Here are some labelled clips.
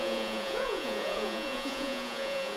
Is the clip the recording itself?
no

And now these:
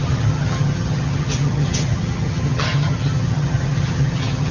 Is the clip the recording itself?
no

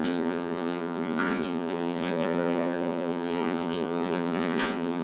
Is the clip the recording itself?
no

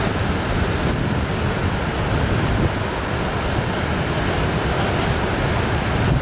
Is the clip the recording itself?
no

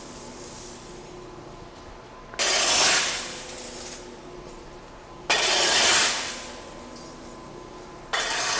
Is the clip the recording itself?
yes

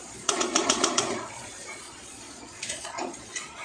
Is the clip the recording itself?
no